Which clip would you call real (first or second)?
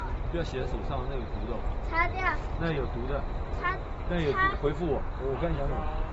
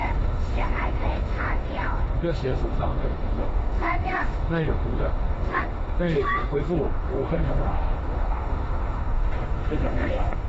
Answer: first